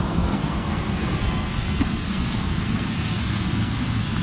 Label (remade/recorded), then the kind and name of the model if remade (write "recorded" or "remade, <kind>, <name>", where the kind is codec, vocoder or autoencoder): remade, codec, SNAC